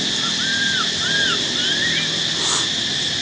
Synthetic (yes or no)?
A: no